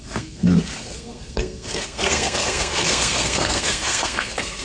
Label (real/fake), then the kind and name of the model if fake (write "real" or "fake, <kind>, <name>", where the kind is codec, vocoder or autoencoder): fake, codec, SNAC